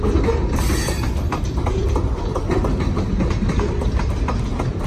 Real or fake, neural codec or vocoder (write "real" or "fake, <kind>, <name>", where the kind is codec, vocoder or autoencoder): real